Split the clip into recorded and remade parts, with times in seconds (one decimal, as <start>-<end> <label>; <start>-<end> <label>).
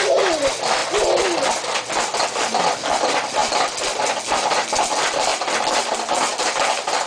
0.0-7.1 recorded